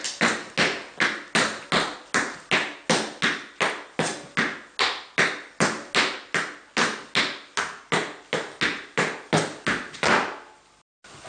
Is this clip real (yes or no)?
yes